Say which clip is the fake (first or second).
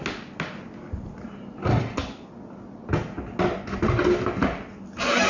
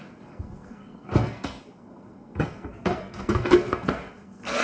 second